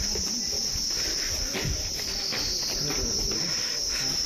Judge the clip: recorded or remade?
recorded